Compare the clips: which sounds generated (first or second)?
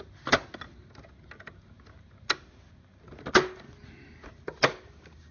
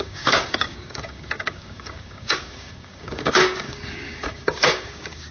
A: second